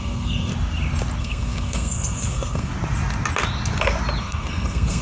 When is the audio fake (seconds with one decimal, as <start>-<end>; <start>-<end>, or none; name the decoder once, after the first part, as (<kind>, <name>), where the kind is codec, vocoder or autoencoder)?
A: 0.0-0.5 (codec, SNAC); 1.2-2.7; 4.2-5.0